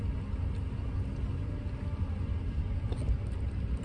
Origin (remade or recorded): recorded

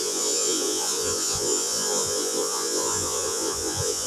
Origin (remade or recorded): remade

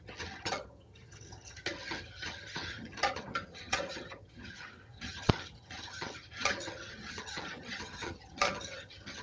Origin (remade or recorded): remade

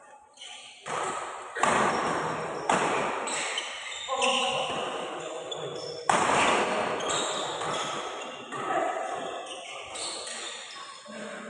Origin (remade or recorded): recorded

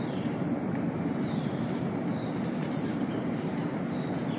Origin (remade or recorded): remade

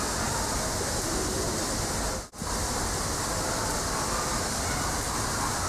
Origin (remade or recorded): recorded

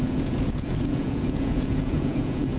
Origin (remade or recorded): remade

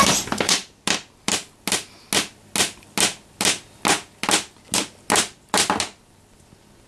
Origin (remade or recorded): recorded